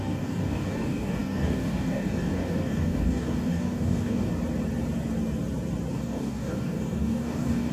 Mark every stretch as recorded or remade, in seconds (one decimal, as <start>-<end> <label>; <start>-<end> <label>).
0.0-4.3 remade; 4.3-5.9 recorded; 5.9-7.7 remade